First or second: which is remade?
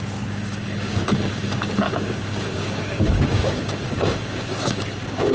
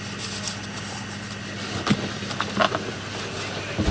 first